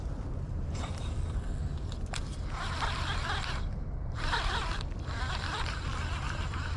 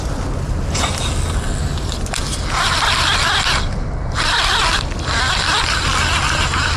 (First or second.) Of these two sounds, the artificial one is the first